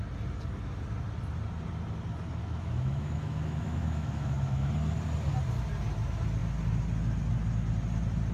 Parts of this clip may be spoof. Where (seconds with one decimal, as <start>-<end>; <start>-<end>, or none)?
2.4-4.7